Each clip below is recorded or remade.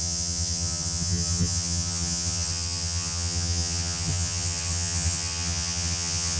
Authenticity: remade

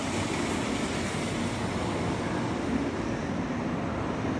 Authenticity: recorded